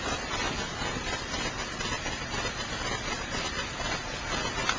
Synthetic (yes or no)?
yes